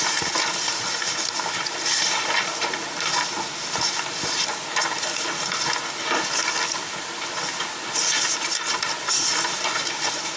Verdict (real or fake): real